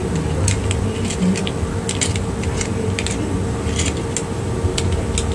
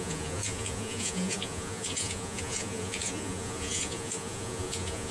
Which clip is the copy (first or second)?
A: second